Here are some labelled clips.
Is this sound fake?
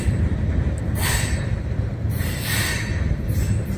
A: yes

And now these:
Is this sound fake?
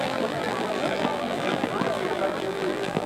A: yes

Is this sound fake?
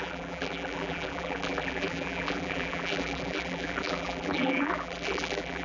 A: yes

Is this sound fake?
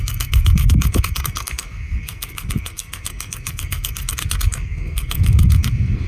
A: yes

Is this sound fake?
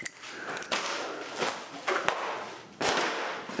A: no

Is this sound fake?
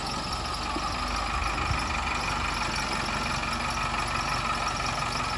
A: no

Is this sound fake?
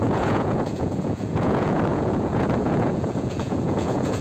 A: yes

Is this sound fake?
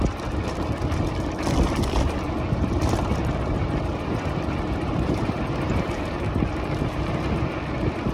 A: yes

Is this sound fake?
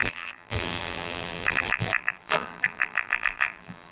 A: yes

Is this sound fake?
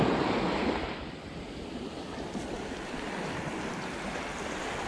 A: no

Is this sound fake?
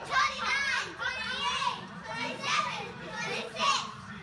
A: yes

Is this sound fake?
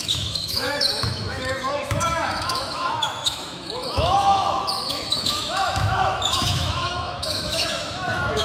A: yes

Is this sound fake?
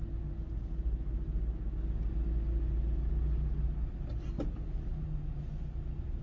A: no